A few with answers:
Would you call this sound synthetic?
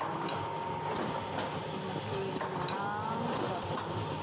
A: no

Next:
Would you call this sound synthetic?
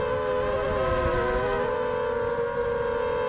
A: no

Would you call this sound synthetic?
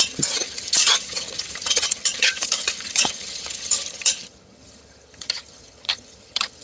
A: yes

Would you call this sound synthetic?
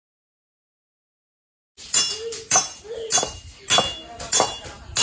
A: no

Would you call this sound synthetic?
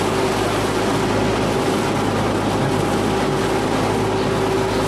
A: no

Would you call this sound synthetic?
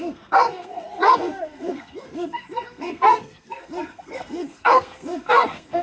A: yes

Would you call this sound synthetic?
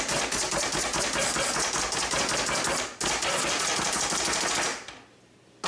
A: no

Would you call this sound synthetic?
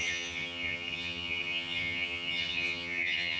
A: yes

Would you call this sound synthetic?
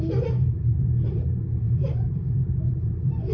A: yes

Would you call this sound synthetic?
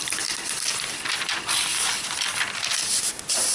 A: yes